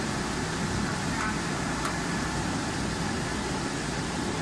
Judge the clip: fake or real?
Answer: real